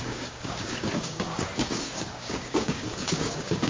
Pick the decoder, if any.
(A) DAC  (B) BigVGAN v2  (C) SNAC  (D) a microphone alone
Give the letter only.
A